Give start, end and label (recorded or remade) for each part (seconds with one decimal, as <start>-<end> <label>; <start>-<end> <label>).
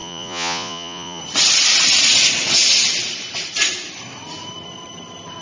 0.0-1.2 remade; 1.2-5.4 recorded